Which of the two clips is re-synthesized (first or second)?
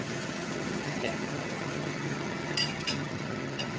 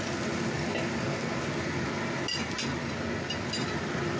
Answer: first